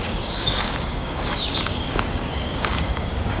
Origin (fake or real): fake